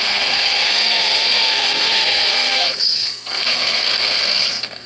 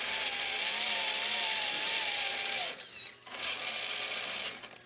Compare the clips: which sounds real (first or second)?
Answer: second